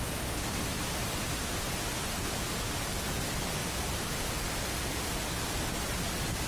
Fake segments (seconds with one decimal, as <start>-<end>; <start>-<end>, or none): 1.0-2.4; 3.6-4.1